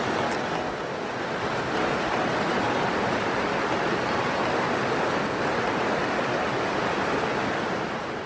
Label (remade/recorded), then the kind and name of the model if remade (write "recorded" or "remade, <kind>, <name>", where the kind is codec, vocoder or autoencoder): recorded